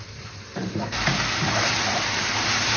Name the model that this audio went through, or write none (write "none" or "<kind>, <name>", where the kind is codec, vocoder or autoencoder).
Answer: vocoder, BigVGAN v2